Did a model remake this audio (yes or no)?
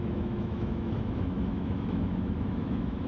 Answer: yes